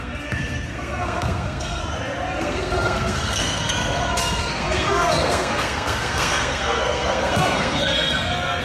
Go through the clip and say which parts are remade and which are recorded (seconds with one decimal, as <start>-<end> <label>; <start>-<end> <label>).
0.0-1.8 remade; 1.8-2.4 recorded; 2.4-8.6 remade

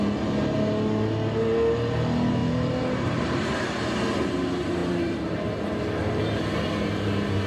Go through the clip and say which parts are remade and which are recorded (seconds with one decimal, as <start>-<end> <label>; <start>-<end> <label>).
0.0-4.8 recorded; 4.8-5.4 remade; 5.4-7.5 recorded

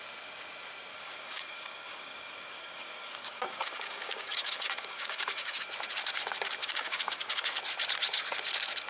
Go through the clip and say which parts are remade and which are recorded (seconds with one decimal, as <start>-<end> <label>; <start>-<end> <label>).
0.0-0.9 recorded; 0.9-5.6 remade; 5.6-6.6 recorded; 6.6-7.6 remade; 7.6-8.9 recorded